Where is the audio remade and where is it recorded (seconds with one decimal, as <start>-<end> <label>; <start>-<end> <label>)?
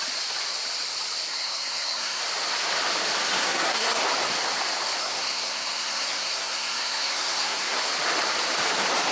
0.0-1.3 recorded; 1.3-2.2 remade; 2.2-3.4 recorded; 3.4-4.0 remade; 4.0-5.0 recorded; 5.0-7.8 remade; 7.8-9.1 recorded